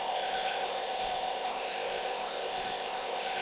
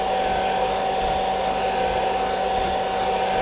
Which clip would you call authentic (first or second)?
second